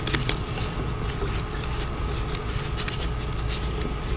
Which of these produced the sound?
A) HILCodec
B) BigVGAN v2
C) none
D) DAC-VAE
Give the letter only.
C